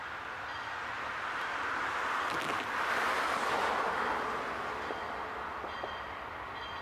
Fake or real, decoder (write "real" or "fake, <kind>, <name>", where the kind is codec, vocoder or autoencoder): real